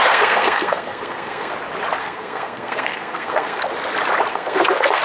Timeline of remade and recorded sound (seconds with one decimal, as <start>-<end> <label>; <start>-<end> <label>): 0.0-1.5 remade; 1.5-2.0 recorded; 2.0-3.6 remade; 3.6-4.3 recorded; 4.3-5.0 remade